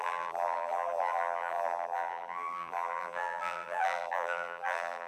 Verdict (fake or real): fake